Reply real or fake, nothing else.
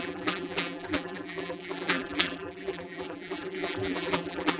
fake